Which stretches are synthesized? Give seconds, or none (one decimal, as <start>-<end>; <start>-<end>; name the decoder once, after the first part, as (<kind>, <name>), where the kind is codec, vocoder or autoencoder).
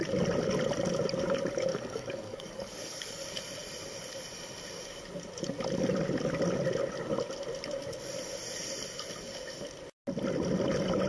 1.7-3.2 (codec, DAC)